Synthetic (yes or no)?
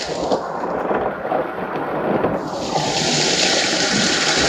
no